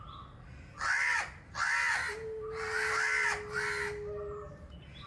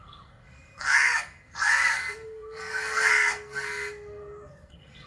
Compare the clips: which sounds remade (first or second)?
second